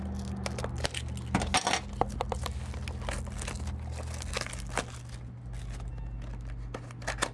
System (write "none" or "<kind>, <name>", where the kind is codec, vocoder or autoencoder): none